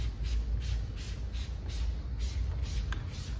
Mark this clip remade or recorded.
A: recorded